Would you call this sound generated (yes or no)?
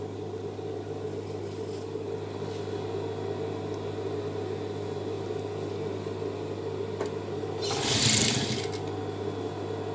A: no